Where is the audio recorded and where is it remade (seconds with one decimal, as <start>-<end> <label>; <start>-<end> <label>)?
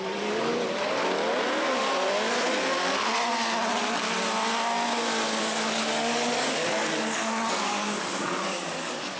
0.0-0.5 remade; 0.5-5.4 recorded; 5.4-9.2 remade